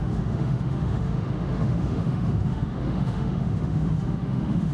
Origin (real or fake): fake